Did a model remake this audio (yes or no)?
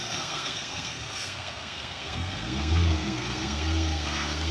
yes